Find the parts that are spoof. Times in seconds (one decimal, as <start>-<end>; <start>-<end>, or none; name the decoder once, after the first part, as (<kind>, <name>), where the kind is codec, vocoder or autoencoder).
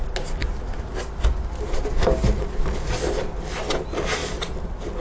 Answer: none